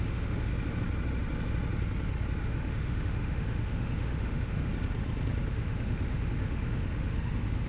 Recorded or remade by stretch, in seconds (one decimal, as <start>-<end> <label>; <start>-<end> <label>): 0.0-0.5 remade; 0.5-2.4 recorded; 2.4-4.7 remade; 4.7-5.5 recorded; 5.5-7.7 remade